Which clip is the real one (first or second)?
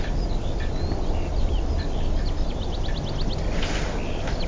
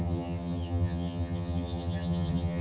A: first